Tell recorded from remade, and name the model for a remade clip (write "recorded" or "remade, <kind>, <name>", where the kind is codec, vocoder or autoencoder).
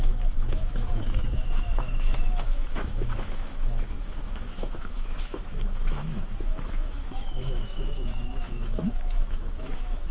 remade, autoencoder, DAC-VAE